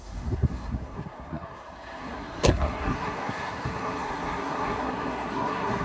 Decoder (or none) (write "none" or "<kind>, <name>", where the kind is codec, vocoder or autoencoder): codec, SNAC